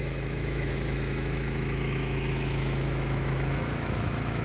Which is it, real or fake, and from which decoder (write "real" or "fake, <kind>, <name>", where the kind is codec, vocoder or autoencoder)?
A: fake, autoencoder, DAC-VAE